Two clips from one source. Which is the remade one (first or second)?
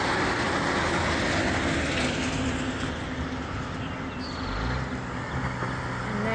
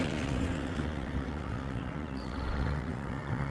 second